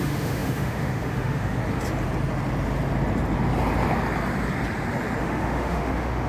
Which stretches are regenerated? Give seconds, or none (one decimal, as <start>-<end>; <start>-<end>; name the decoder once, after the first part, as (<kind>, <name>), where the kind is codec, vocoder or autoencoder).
0.0-1.6 (autoencoder, DAC-VAE); 5.2-6.3